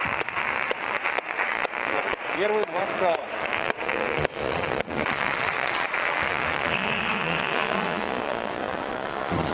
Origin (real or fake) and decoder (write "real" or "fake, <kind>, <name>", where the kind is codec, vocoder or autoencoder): fake, vocoder, Vocos